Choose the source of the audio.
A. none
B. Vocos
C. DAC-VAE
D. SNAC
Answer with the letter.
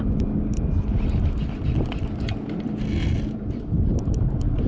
A